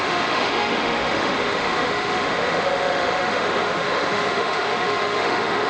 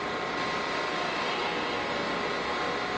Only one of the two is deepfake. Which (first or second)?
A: first